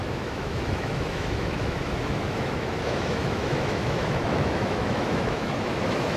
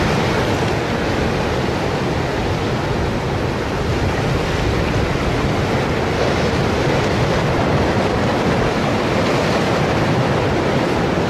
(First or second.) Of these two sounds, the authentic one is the second